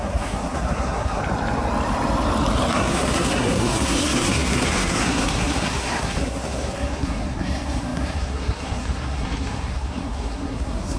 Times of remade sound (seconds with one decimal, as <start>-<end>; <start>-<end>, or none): 0.0-1.2; 2.7-11.0

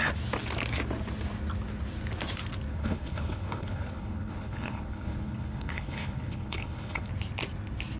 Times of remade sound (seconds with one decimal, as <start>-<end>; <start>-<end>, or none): 2.7-7.1

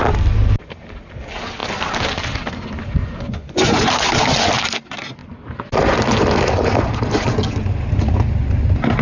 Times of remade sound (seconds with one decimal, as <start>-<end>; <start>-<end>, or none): 3.0-3.9

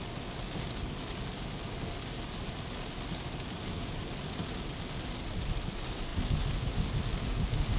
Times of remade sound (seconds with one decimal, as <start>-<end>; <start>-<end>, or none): none

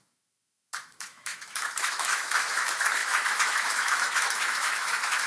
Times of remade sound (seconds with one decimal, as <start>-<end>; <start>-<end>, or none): 0.0-5.3